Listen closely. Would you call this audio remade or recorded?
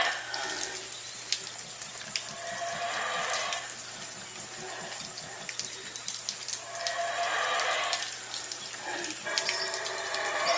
recorded